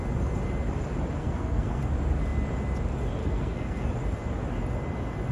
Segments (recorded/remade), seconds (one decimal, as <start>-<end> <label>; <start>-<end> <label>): 0.0-1.2 recorded; 1.2-1.9 remade; 1.9-3.2 recorded; 3.2-3.9 remade; 3.9-5.3 recorded